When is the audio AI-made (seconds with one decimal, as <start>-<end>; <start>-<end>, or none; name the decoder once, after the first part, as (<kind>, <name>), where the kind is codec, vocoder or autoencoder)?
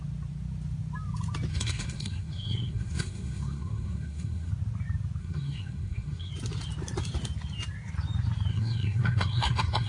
1.5-4.5 (codec, SNAC); 5.2-6.3; 8.5-9.9